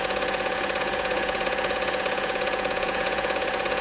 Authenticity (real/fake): fake